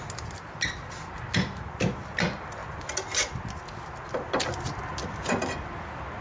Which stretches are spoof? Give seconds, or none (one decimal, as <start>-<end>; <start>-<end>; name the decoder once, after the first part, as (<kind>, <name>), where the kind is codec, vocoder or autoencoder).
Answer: none